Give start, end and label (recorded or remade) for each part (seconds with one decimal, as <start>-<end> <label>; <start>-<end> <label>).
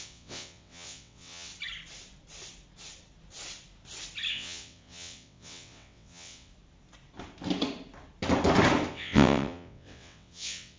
0.0-1.5 remade; 1.5-4.3 recorded; 4.3-6.5 remade; 6.5-8.9 recorded; 8.9-10.8 remade